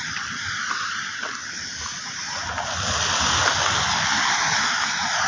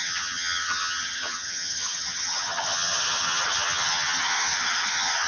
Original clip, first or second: first